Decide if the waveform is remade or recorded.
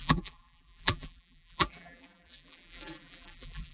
remade